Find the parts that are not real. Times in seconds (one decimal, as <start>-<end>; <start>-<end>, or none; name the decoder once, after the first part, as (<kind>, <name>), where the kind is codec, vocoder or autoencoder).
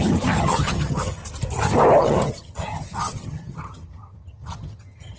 0.0-1.2 (vocoder, HiFi-GAN); 2.0-5.2